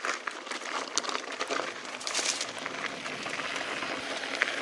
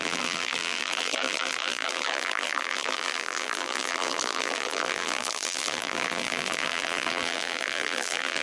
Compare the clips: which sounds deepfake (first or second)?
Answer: second